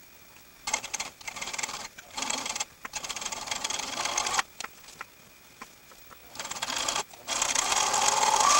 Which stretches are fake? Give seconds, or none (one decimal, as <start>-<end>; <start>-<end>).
0.5-3.9